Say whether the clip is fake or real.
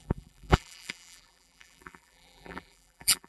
fake